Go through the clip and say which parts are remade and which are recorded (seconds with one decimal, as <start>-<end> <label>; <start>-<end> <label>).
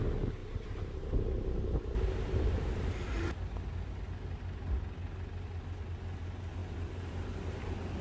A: 0.0-0.4 recorded; 0.4-2.9 remade; 2.9-8.0 recorded